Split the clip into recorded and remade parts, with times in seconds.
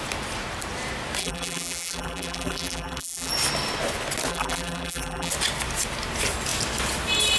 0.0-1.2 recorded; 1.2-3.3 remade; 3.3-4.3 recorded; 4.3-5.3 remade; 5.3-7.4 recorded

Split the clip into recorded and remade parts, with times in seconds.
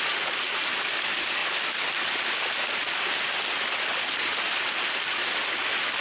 0.0-6.0 recorded